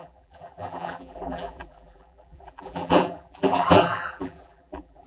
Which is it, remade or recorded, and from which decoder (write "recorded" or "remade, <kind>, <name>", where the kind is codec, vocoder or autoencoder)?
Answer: remade, vocoder, BigVGAN v2